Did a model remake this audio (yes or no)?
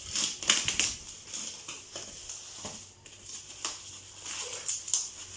no